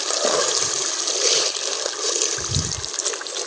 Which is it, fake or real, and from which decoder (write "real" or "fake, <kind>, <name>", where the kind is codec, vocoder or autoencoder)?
real